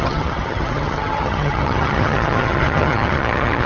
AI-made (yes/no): yes